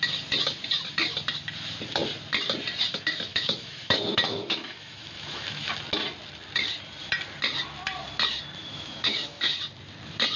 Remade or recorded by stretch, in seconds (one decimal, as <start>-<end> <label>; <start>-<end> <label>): 0.0-3.3 recorded; 3.3-5.7 remade; 5.7-8.6 recorded; 8.6-9.6 remade; 9.6-10.4 recorded